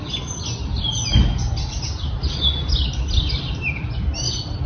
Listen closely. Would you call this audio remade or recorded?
recorded